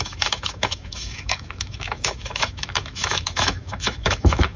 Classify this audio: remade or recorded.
remade